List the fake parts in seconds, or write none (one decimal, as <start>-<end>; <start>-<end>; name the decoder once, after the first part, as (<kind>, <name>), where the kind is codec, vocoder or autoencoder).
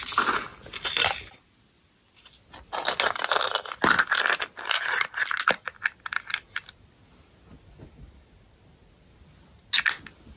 none